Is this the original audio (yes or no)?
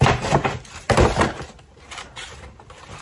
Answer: yes